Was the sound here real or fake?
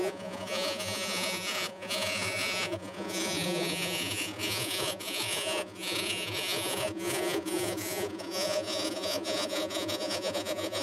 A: fake